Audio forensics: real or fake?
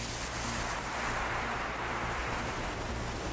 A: real